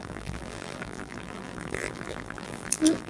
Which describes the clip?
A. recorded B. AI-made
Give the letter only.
B